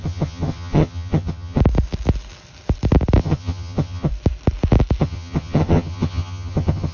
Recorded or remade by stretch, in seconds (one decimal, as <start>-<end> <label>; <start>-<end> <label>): 0.0-1.6 remade; 1.6-3.2 recorded; 3.2-4.1 remade; 4.1-5.0 recorded; 5.0-6.9 remade